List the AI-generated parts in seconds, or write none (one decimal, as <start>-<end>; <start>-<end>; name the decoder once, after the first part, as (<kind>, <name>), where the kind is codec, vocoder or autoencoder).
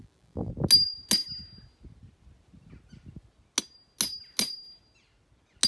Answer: 0.0-0.5 (vocoder, BigVGAN v2)